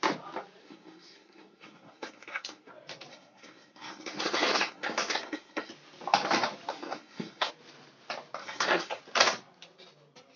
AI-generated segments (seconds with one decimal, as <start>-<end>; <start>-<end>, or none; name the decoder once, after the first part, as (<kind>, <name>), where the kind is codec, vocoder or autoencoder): 0.6-2.7 (codec, SNAC); 3.1-5.7; 6.7-7.5; 8.4-9.0